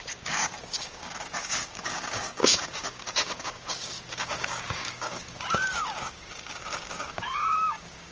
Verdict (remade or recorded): remade